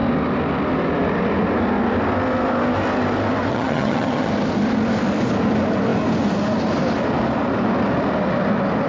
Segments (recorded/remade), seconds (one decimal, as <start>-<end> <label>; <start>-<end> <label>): 0.0-3.5 recorded; 3.5-4.3 remade; 4.3-8.9 recorded